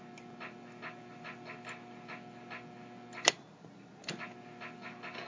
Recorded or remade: recorded